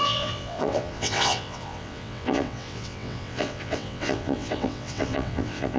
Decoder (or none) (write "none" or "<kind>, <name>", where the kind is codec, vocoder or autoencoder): vocoder, WaveNeXt